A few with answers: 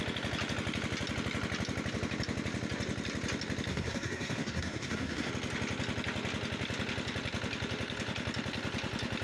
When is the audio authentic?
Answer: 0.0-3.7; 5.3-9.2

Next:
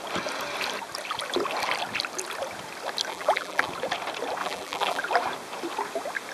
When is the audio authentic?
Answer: 0.0-3.1; 3.7-4.4; 5.0-6.3

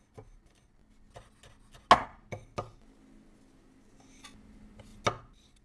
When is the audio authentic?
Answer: 0.0-5.6

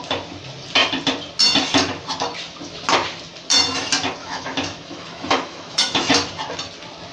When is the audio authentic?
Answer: 0.0-4.2; 6.1-7.1